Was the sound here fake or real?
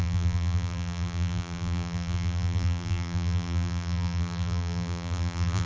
fake